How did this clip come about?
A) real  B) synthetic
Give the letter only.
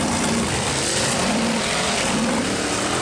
B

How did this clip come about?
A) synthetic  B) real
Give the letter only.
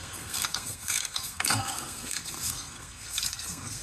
A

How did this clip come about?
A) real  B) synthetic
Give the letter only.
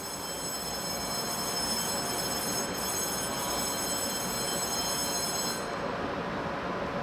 A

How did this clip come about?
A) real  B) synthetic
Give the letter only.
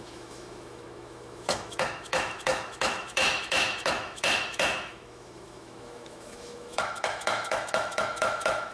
B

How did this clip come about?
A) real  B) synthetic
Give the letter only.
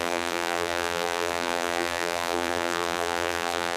B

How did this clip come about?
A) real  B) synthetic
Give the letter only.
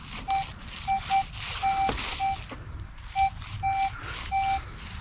A